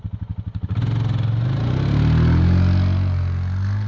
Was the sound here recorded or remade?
recorded